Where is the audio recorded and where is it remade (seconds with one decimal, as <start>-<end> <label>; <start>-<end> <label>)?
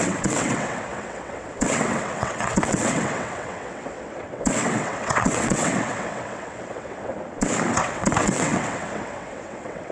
0.0-7.1 remade; 7.1-7.7 recorded; 7.7-9.9 remade